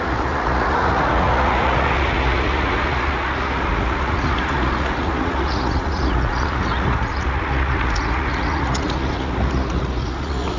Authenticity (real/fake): fake